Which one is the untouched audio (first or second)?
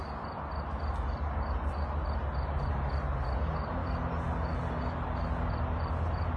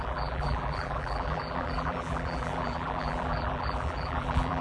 first